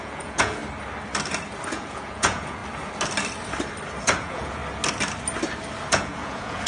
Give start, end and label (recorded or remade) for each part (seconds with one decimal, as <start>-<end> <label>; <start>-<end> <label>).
0.0-0.6 remade; 0.6-1.7 recorded; 1.7-2.6 remade; 2.6-4.0 recorded; 4.0-4.6 remade; 4.6-5.9 recorded; 5.9-6.7 remade